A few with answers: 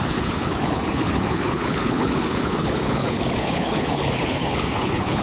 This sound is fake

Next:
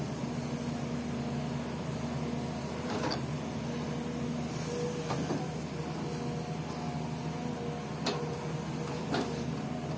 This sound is real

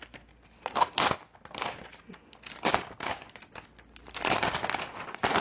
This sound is real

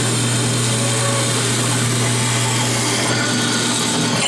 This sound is real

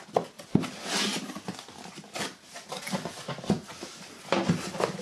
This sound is real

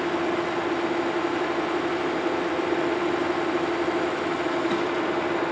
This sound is real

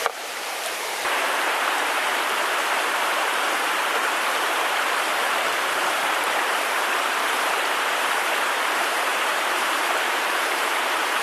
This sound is fake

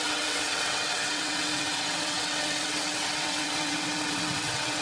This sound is fake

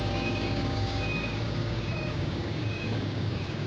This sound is fake